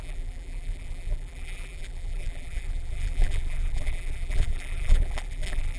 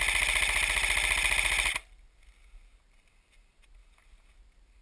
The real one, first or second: second